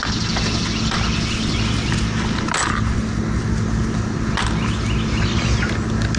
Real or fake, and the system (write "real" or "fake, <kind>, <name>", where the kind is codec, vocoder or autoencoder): real